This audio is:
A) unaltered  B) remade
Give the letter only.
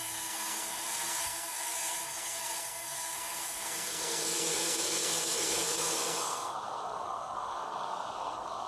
B